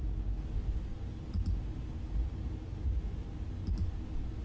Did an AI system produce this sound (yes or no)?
no